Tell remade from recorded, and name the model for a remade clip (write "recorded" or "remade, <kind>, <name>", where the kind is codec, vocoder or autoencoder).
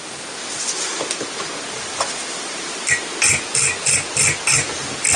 recorded